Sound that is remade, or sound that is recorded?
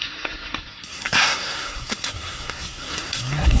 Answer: remade